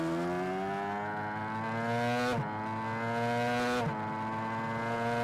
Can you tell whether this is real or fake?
real